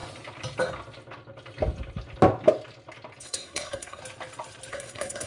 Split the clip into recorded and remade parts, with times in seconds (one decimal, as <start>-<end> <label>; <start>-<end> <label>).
0.0-3.2 recorded; 3.2-4.0 remade; 4.0-4.7 recorded; 4.7-5.3 remade